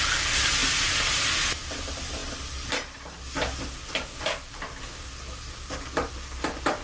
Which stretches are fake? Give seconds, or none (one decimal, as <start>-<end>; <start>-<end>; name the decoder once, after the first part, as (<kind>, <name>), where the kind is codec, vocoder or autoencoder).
none